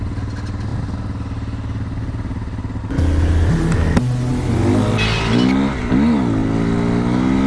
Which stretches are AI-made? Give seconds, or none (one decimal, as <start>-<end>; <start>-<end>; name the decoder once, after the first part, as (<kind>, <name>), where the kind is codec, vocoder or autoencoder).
none